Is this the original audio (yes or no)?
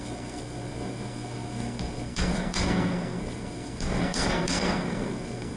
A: no